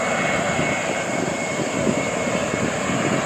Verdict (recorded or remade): remade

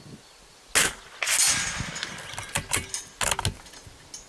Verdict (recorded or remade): recorded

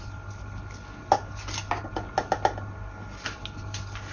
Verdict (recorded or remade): recorded